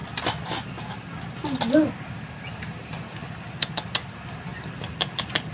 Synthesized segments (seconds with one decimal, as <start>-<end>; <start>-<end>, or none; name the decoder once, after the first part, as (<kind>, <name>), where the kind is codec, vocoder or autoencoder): none